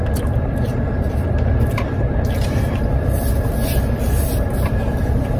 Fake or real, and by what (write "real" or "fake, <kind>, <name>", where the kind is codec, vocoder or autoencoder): fake, vocoder, BigVGAN v2